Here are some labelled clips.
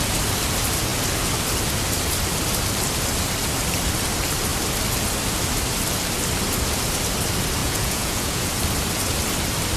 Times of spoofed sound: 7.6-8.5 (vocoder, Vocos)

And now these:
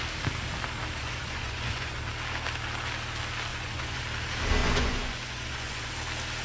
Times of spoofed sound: 1.0-2.0 (vocoder, Vocos); 3.5-4.0; 4.6-5.9